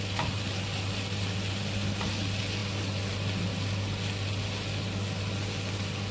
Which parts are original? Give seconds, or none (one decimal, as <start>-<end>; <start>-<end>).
0.0-6.1

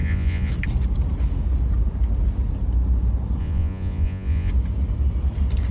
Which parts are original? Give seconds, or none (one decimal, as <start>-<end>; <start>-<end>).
0.5-3.4; 4.5-5.7